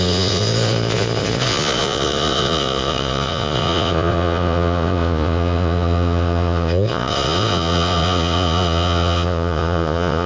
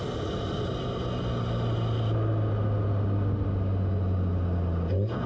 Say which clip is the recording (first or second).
second